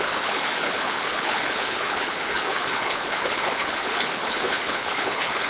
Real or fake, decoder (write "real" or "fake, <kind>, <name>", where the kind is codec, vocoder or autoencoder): fake, codec, HILCodec